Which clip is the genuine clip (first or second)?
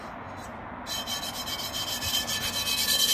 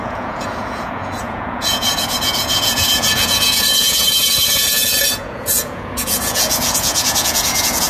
first